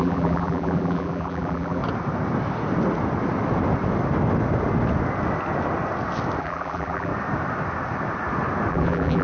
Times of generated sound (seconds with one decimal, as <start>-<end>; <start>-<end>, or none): 0.0-1.8; 6.4-7.1; 8.7-9.2